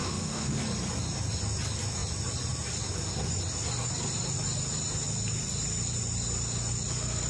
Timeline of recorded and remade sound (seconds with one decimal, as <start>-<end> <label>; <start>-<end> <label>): 0.0-0.6 remade; 0.6-7.3 recorded